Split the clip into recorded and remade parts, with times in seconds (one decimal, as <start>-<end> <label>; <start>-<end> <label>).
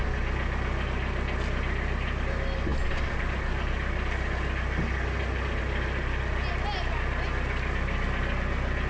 0.0-8.9 recorded